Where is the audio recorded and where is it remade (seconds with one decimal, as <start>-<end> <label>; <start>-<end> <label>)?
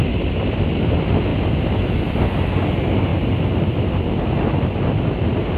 0.0-3.1 recorded; 3.1-3.8 remade; 3.8-5.6 recorded